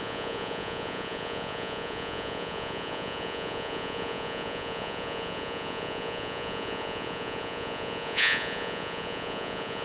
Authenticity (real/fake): fake